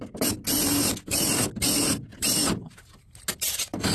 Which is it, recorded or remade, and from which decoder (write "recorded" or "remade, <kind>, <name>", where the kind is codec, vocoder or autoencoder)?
recorded